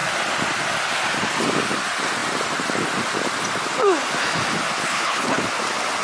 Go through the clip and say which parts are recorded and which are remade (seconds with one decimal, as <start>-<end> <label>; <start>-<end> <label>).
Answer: 0.0-4.8 recorded; 4.8-5.4 remade; 5.4-6.0 recorded